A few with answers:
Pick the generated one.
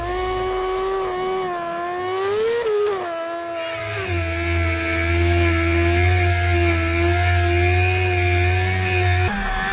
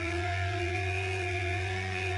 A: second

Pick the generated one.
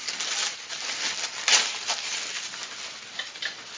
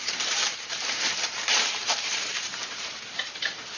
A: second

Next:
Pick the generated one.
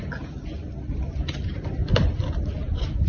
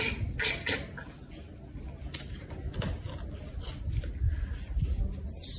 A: first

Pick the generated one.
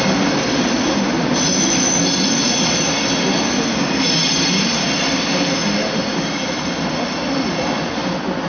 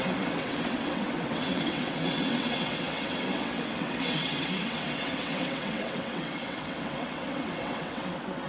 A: second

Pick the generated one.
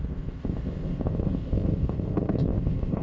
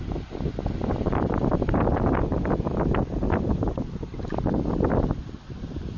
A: first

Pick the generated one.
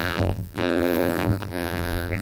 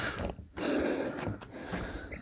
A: first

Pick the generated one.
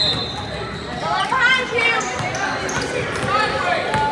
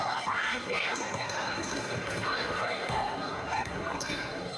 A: second